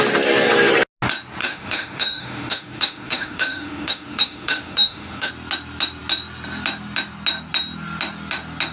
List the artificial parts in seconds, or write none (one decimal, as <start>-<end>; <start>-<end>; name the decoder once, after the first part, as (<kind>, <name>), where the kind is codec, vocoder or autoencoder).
1.4-5.3 (autoencoder, DAC-VAE)